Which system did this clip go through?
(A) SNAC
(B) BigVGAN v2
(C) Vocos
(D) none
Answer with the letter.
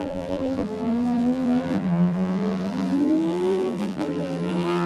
B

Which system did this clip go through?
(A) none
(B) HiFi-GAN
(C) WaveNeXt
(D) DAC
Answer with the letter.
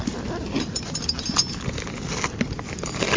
A